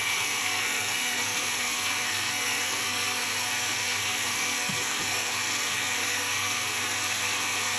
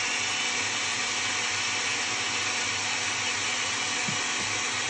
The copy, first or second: first